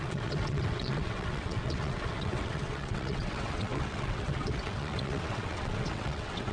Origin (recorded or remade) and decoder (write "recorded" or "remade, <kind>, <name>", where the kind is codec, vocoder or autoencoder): remade, vocoder, WaveNeXt